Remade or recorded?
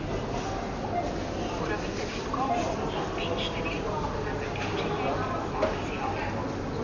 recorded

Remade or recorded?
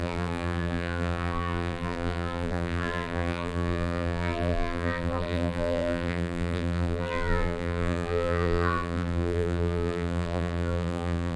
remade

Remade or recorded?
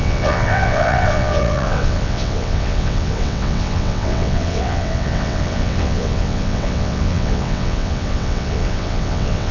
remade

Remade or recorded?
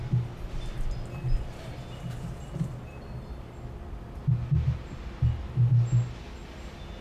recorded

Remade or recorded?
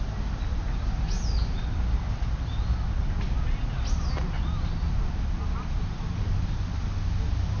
recorded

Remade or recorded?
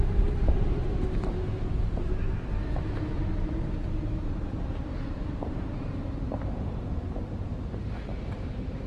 remade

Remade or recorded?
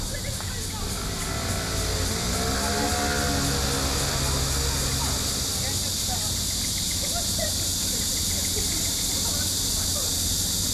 recorded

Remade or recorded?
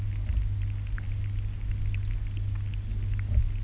recorded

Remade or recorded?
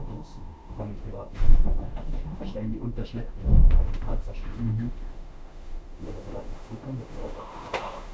remade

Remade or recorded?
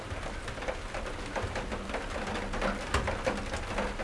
recorded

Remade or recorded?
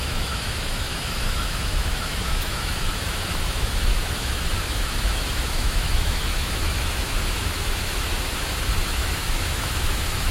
remade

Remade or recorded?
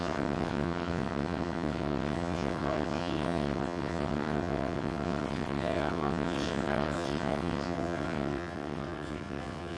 remade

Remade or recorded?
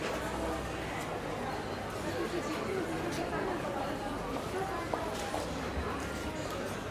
recorded